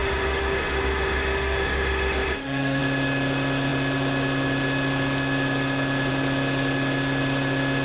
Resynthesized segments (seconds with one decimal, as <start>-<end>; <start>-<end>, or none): 0.0-2.8